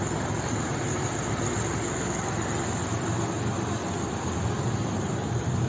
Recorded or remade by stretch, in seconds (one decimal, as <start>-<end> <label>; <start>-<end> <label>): 0.0-3.8 recorded; 3.8-4.5 remade; 4.5-5.7 recorded